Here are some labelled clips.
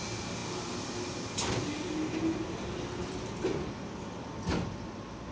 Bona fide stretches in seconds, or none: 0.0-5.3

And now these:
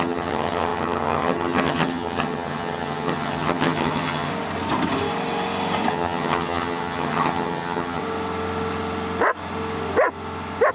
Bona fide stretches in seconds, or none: 4.3-5.9; 8.0-10.7

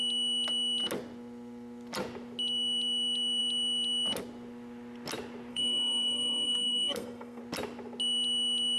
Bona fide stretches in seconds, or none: 0.0-5.5; 7.4-8.8